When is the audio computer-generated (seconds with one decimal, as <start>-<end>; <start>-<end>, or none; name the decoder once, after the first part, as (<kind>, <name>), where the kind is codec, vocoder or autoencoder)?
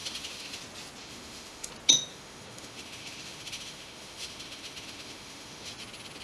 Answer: 0.0-0.6 (autoencoder, DAC-VAE); 1.0-1.7; 2.1-5.7